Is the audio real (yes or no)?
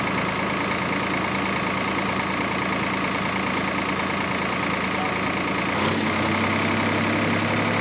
yes